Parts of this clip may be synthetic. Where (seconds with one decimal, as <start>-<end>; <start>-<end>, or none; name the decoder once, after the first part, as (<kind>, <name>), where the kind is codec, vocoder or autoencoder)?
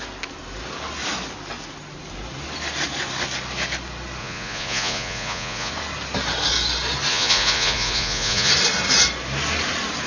4.2-5.7 (vocoder, Vocos); 7.1-8.5